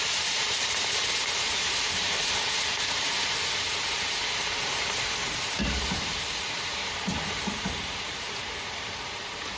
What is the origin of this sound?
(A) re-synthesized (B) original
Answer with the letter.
A